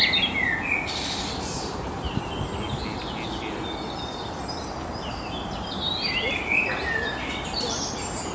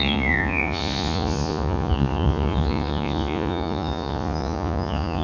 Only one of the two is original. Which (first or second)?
first